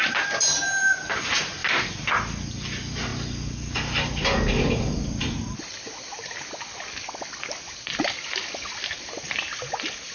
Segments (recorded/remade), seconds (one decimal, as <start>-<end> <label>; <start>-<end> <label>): 0.0-10.1 recorded

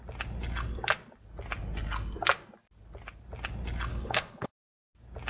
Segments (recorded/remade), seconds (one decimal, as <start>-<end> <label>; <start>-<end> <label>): 0.0-3.9 recorded; 3.9-4.5 remade; 4.5-5.3 recorded

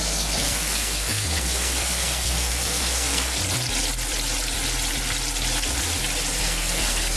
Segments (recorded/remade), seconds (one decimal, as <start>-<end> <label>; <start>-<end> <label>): 0.0-3.4 remade; 3.4-6.4 recorded; 6.4-7.2 remade